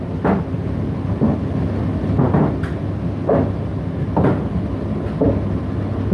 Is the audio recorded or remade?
recorded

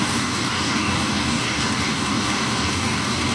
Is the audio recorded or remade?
remade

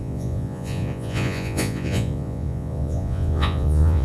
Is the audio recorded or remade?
remade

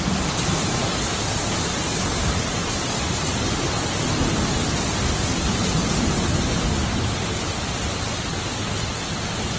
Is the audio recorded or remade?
recorded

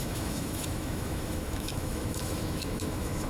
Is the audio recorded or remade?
remade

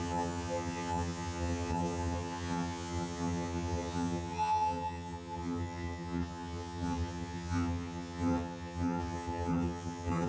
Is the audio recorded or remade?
remade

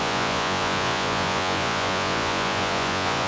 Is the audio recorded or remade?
remade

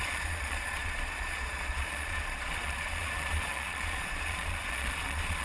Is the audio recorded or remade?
remade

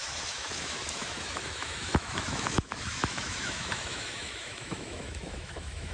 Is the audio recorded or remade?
remade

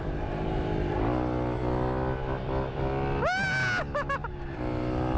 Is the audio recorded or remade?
recorded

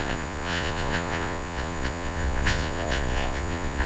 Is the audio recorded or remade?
remade